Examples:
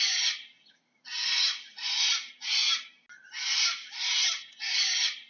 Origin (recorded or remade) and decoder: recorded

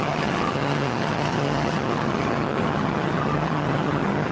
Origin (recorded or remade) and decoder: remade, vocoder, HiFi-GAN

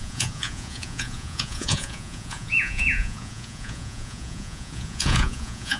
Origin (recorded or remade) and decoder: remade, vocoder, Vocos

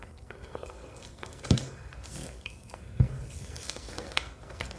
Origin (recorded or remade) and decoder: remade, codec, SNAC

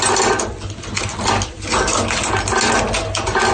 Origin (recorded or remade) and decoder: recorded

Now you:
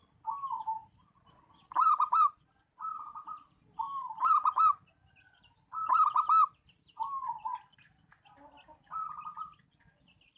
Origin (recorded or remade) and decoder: remade, vocoder, BigVGAN v2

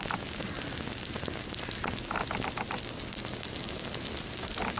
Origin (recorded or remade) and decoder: recorded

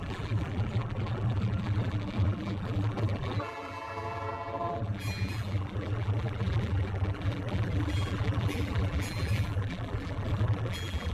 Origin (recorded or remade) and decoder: remade, vocoder, BigVGAN v2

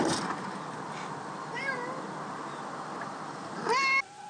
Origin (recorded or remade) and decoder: recorded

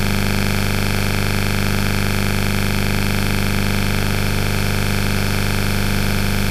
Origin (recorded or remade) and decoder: remade, autoencoder, DAC-VAE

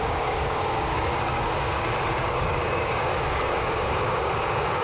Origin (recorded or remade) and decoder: remade, codec, DAC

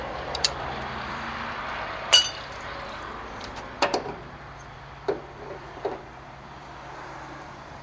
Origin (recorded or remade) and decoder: remade, vocoder, BigVGAN v2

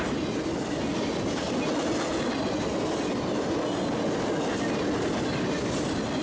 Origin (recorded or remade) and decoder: recorded